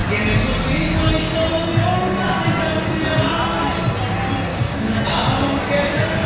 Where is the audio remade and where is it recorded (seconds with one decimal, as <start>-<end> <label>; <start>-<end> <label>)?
0.0-4.5 recorded; 4.5-5.0 remade; 5.0-6.3 recorded